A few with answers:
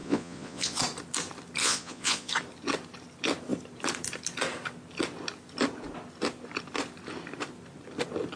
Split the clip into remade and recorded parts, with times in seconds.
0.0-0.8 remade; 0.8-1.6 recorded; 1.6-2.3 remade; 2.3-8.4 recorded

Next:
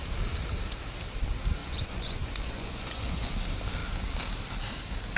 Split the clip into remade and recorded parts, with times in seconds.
0.0-1.6 recorded; 1.6-3.3 remade; 3.3-5.2 recorded